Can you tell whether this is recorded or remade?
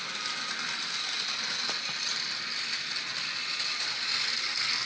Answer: recorded